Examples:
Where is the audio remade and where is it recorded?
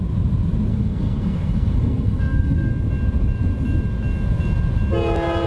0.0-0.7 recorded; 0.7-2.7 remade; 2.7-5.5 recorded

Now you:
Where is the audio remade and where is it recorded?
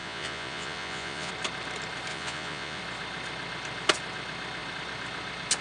0.0-1.3 remade; 1.3-2.1 recorded; 2.1-2.8 remade; 2.8-5.6 recorded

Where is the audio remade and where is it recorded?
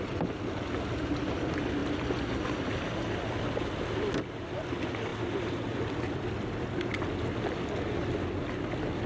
0.0-9.1 recorded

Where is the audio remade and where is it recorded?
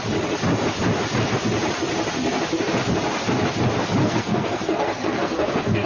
0.0-4.0 recorded; 4.0-5.9 remade